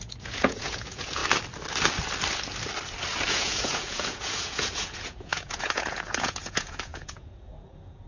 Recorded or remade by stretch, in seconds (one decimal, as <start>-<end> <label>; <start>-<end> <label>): 0.0-1.2 remade; 1.2-3.3 recorded; 3.3-8.1 remade